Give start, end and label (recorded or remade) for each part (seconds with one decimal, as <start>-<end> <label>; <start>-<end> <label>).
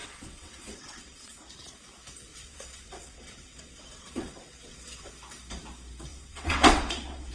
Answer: 0.0-1.5 remade; 1.5-2.3 recorded; 2.3-5.1 remade; 5.1-6.1 recorded; 6.1-7.3 remade